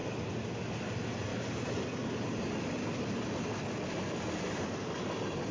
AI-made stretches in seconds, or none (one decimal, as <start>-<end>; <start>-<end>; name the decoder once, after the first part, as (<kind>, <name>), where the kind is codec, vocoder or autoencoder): none